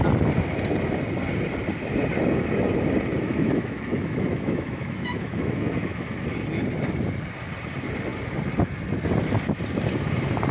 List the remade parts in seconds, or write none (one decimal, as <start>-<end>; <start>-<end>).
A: 3.1-6.1